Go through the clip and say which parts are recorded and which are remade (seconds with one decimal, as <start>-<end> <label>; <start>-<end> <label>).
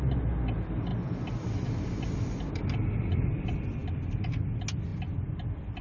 0.0-5.8 recorded